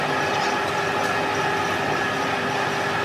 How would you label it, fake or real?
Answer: real